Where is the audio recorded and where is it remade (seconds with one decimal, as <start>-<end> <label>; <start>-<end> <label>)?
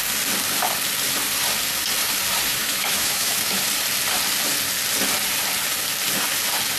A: 0.0-2.5 recorded; 2.5-3.6 remade; 3.6-6.8 recorded